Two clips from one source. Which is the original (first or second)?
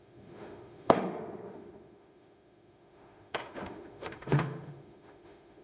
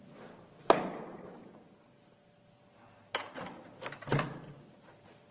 second